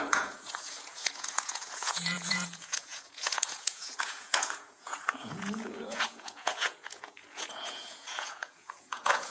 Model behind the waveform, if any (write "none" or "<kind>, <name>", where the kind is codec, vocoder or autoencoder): vocoder, Vocos